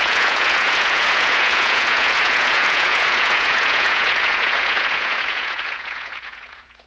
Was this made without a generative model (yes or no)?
no